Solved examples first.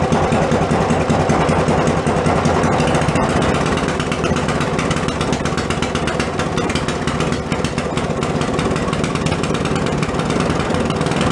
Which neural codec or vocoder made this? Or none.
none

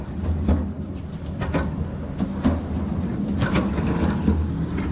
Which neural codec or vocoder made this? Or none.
none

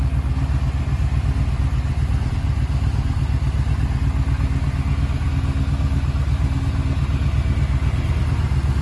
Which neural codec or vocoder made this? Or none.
none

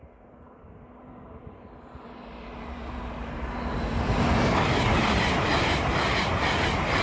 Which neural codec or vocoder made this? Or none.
none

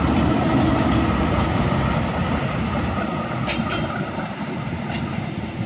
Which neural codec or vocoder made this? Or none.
none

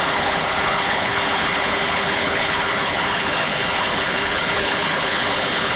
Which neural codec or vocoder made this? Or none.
codec, HILCodec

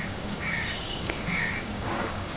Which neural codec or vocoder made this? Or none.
codec, DAC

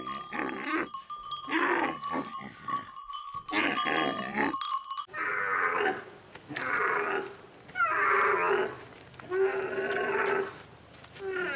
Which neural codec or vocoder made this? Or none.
none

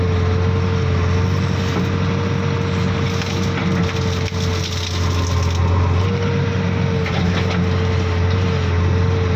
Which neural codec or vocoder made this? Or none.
none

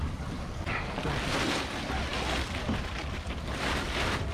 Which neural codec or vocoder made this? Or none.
none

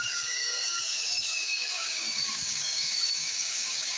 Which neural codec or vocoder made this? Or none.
codec, DAC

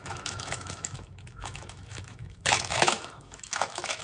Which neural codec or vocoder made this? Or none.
autoencoder, DAC-VAE